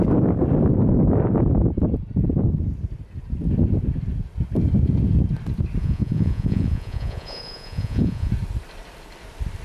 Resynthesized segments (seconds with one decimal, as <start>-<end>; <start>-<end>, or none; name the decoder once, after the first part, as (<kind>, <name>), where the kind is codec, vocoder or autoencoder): 5.8-8.3 (vocoder, Vocos)